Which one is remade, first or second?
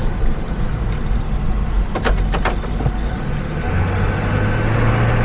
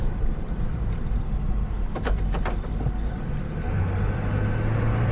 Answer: second